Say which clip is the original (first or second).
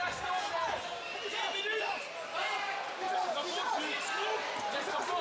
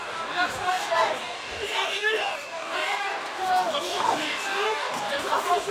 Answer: first